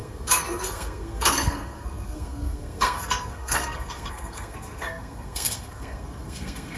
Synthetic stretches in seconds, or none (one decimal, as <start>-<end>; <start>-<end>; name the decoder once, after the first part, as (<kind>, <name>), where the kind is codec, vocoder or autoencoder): 0.0-6.8 (codec, SNAC)